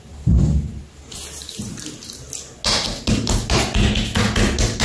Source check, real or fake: real